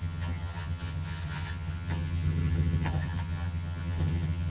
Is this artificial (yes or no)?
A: yes